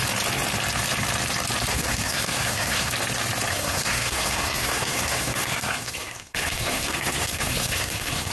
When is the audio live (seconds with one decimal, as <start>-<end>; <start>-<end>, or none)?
0.0-1.7; 2.9-3.5